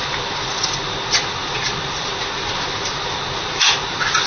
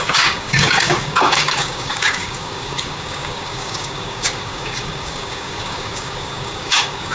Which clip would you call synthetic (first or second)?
second